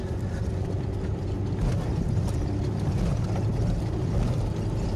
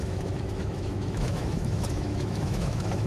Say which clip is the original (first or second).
first